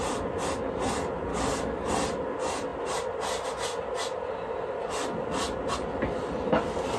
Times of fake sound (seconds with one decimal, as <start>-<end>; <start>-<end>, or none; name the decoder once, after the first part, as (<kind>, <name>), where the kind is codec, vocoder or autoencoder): 1.3-1.9 (codec, DAC)